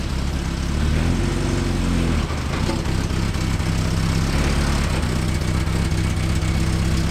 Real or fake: real